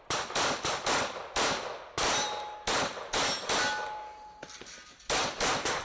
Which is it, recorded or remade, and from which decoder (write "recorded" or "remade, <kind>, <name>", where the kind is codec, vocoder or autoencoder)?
recorded